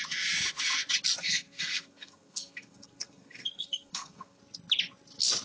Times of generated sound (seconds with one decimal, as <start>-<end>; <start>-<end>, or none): 1.2-4.4